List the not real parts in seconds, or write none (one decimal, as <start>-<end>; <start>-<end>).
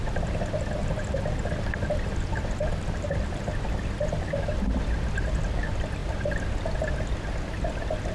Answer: 0.8-3.4